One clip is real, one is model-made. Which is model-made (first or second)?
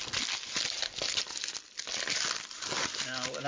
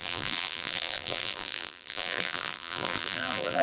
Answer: second